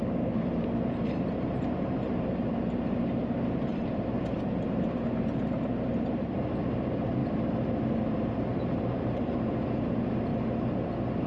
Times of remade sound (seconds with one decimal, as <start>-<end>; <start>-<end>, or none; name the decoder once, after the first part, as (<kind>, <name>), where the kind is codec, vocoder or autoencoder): 0.0-7.2 (vocoder, BigVGAN v2); 7.9-10.3